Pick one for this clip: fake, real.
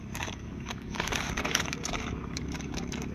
fake